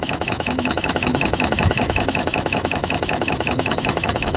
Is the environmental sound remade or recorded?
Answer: remade